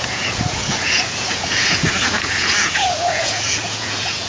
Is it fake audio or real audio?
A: fake